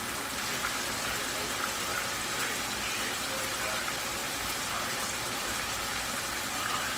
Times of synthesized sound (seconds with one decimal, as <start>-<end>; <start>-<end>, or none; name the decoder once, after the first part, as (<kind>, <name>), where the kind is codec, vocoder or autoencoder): 1.9-2.6 (vocoder, BigVGAN v2)